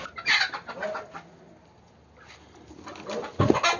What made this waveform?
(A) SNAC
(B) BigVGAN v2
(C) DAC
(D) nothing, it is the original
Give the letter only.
D